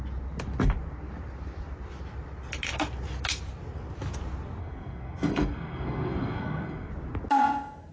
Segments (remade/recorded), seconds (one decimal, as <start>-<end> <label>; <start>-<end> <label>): 0.0-4.6 recorded; 4.6-6.9 remade; 6.9-7.9 recorded